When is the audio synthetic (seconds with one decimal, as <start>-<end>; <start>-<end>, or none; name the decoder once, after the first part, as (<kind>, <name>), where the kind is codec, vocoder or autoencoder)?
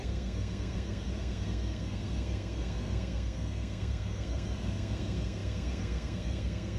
0.0-6.8 (codec, SNAC)